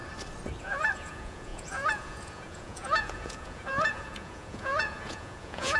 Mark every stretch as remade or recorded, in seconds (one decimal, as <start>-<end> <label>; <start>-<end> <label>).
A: 0.0-0.6 recorded; 0.6-5.8 remade